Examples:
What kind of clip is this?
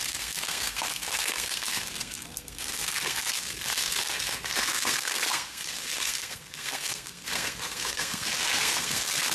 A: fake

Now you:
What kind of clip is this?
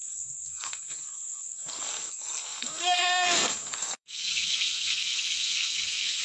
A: fake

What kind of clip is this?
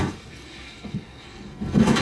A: fake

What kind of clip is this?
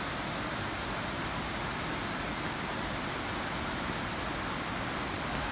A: real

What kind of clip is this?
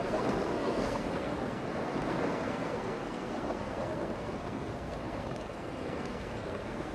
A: fake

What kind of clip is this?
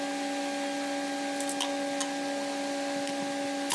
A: real